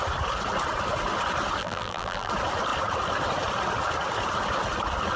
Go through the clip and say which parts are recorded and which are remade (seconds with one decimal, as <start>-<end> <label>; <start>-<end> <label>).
0.0-1.6 recorded; 1.6-2.3 remade; 2.3-5.2 recorded